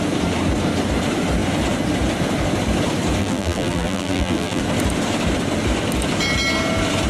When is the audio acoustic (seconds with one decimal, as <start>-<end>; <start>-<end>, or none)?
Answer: 0.0-3.2; 4.6-7.1